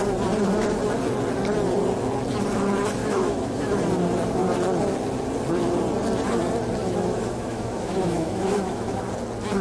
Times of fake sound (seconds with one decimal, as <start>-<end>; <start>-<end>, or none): 3.0-3.8; 6.8-9.0